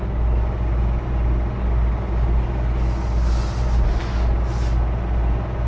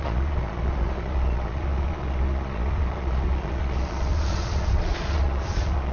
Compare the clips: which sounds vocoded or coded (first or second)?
second